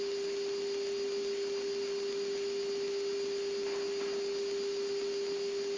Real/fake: real